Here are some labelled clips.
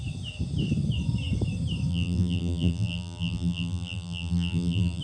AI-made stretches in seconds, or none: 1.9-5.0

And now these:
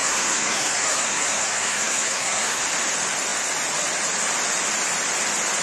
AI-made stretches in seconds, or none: 0.0-2.6

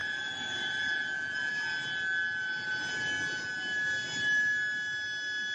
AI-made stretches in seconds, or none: 0.0-1.5

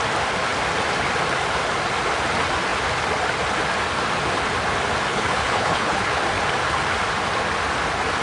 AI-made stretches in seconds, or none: 5.1-6.2

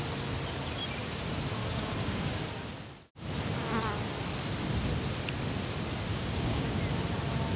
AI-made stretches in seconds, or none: 1.6-2.4; 6.1-6.8

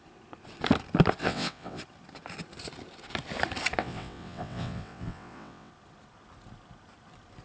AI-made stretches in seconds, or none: 1.2-1.8; 3.8-5.7